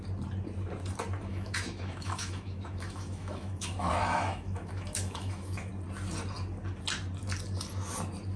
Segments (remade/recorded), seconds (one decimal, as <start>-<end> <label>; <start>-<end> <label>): 0.0-1.3 recorded; 1.3-5.7 remade; 5.7-8.4 recorded